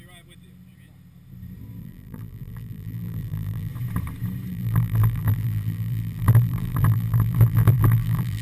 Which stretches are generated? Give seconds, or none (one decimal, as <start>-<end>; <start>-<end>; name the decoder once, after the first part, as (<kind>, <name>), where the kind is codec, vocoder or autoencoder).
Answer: 1.8-3.7 (vocoder, BigVGAN v2); 4.5-8.4